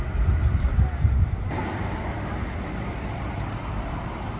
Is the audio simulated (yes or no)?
yes